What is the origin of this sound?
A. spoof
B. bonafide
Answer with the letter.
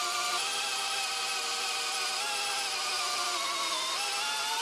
B